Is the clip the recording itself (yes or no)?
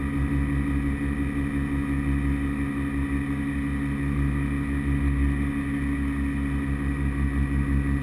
yes